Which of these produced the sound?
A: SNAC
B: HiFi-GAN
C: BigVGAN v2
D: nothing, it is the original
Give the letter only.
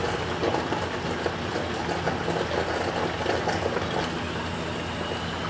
D